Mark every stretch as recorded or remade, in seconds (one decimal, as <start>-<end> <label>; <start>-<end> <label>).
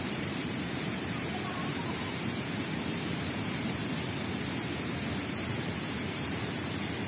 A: 0.0-3.8 remade; 3.8-5.5 recorded; 5.5-7.1 remade